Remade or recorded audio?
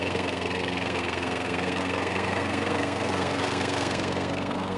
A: remade